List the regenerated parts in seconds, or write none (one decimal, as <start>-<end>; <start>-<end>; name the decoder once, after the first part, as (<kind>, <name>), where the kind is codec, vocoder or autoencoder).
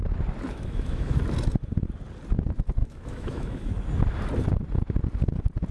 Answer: 0.5-1.2 (autoencoder, DAC-VAE); 2.8-3.7